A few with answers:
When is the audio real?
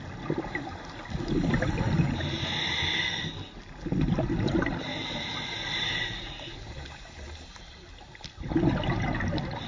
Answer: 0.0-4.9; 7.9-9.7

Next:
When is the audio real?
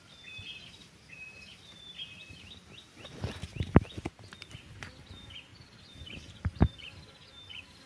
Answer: 0.0-2.2; 2.7-5.5; 6.7-7.9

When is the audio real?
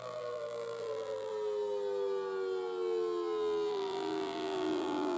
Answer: 1.3-3.7